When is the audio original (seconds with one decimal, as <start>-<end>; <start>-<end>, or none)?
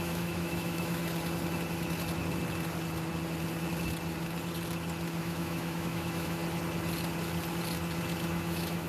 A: 1.0-5.2; 6.4-8.3